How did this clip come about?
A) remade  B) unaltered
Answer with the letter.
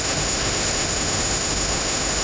A